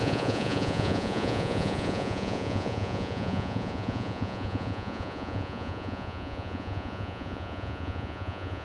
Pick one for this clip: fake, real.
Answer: fake